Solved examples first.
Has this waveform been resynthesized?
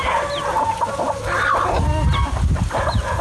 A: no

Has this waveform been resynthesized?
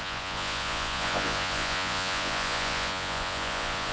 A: yes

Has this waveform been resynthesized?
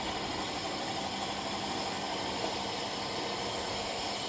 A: no